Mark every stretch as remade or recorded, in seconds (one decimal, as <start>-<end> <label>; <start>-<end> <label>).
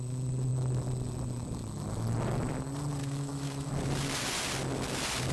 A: 0.0-3.0 recorded; 3.0-3.7 remade; 3.7-5.3 recorded